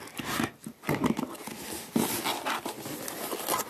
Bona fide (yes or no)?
yes